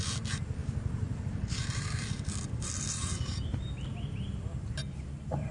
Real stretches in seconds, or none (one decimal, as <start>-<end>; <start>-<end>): none